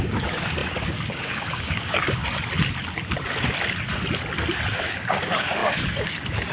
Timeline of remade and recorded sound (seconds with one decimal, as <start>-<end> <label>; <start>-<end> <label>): 0.0-2.2 remade; 2.2-4.7 recorded; 4.7-6.5 remade